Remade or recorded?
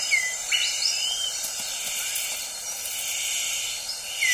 recorded